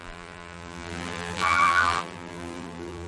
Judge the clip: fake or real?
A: fake